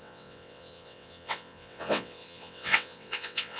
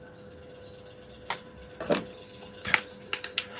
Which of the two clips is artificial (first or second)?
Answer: first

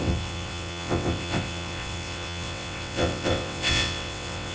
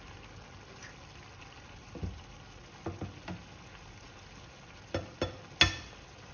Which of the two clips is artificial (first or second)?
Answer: first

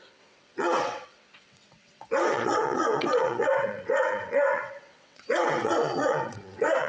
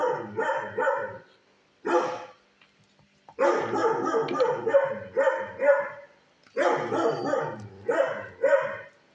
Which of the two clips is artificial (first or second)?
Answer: first